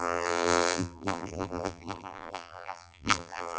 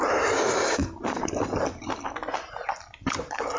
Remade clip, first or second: first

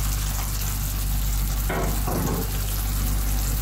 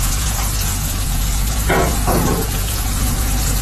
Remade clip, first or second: second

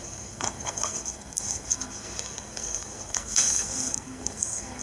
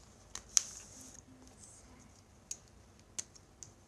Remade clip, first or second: first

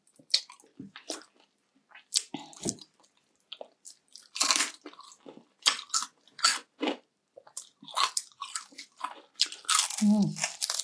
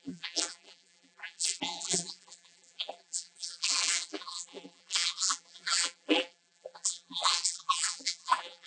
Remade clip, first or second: second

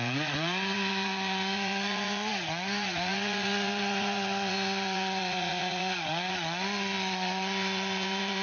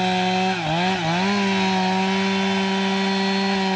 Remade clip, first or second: first